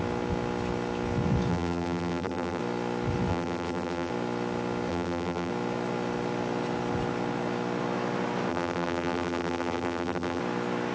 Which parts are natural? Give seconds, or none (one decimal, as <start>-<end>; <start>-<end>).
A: 0.0-1.5; 2.6-3.3; 4.1-4.9; 5.5-8.5; 10.4-10.9